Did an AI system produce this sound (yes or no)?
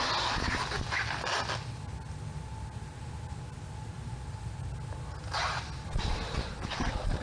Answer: no